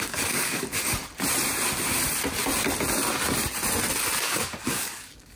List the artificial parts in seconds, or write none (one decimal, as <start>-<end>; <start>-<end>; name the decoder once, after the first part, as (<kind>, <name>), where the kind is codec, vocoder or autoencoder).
0.0-1.0 (codec, DAC); 4.2-5.4